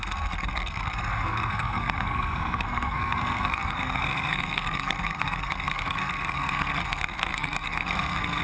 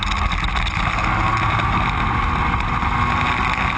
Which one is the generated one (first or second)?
first